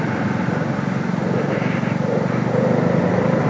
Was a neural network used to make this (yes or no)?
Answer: no